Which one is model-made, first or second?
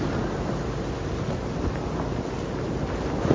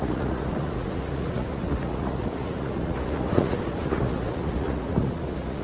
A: second